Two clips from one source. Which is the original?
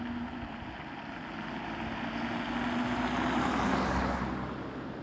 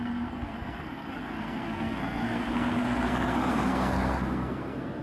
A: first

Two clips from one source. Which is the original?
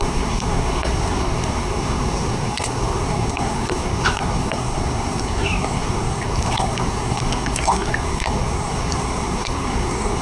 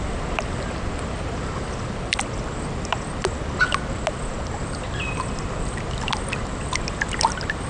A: second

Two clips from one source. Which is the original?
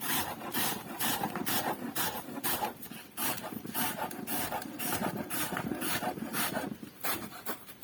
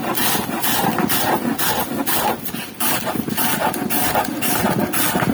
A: second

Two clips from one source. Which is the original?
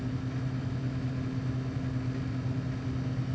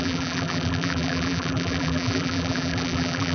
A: first